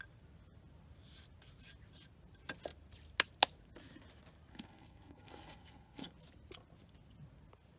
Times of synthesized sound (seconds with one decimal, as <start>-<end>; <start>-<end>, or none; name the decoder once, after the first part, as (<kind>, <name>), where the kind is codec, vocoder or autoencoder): 4.5-6.1 (codec, SNAC)